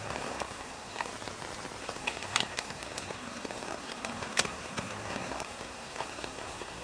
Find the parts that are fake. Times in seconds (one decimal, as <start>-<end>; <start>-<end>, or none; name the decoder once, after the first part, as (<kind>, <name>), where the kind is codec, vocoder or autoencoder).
0.0-1.1 (codec, SNAC); 1.8-6.8